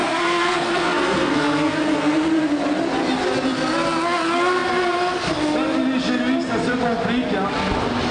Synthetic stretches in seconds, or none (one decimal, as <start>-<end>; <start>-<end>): 0.0-1.8